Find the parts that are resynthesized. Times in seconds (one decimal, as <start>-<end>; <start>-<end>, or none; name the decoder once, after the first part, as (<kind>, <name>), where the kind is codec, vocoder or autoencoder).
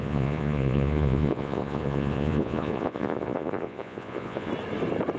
0.0-4.5 (vocoder, Vocos)